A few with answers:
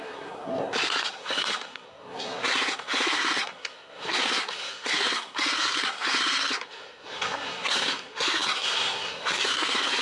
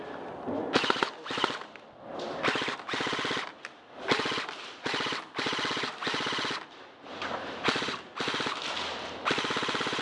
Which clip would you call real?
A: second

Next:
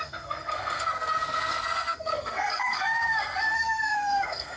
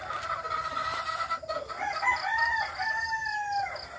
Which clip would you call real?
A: second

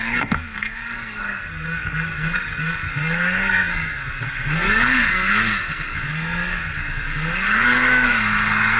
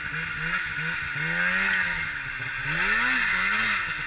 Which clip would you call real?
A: second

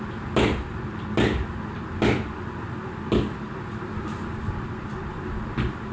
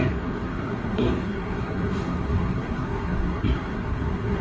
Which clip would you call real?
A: first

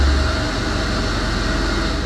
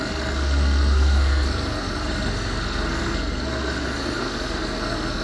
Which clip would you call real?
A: first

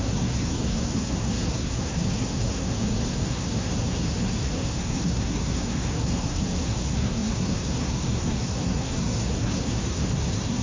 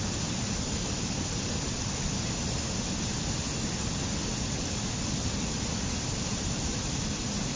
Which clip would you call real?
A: second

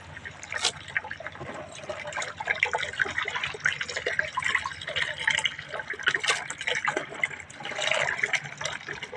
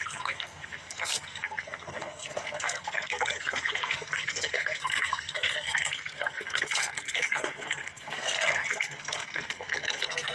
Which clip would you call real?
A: first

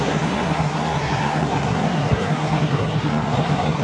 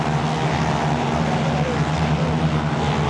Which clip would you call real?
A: second